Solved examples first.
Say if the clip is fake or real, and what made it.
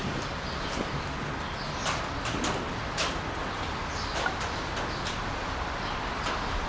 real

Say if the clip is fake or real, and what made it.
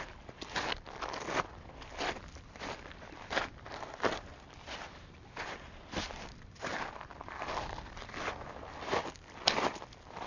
fake, vocoder, BigVGAN v2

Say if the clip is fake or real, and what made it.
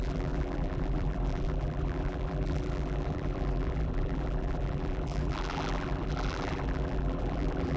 fake, vocoder, BigVGAN v2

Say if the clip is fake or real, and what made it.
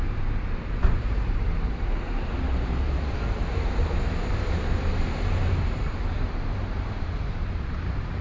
fake, vocoder, BigVGAN v2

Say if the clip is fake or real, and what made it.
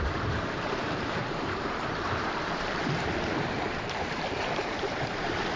fake, vocoder, BigVGAN v2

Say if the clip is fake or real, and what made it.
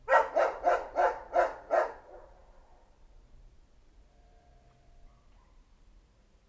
real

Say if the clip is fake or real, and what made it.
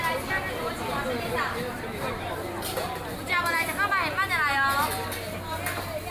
real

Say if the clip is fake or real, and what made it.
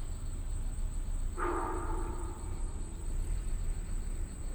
real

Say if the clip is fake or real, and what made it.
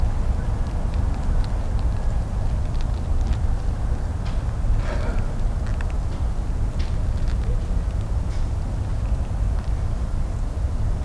real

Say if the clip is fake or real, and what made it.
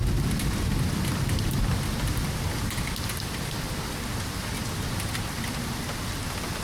real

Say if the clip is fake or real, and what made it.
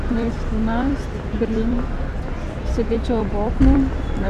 fake, vocoder, BigVGAN v2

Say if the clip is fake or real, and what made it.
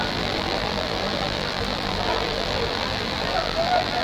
fake, vocoder, BigVGAN v2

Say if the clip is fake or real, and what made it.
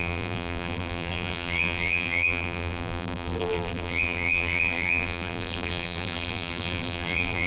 fake, vocoder, BigVGAN v2